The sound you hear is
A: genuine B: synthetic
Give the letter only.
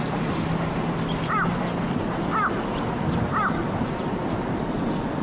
A